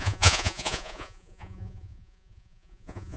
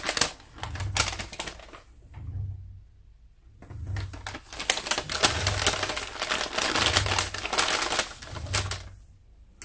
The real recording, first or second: second